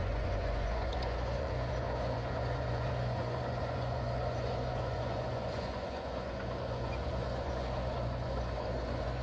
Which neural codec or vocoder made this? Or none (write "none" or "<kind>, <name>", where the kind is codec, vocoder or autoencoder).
vocoder, Vocos